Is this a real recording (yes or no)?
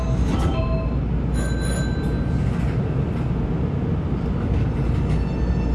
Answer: yes